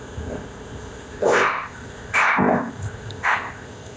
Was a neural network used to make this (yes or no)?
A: yes